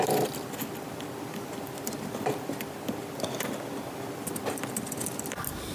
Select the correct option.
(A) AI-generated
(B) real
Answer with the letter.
B